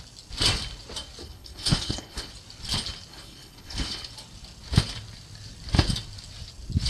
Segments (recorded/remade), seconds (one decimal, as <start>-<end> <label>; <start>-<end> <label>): 0.0-1.2 recorded; 1.2-2.3 remade; 2.3-3.1 recorded; 3.1-4.1 remade; 4.1-6.9 recorded